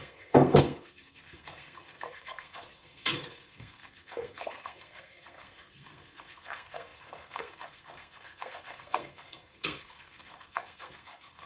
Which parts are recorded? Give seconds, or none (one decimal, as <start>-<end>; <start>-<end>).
none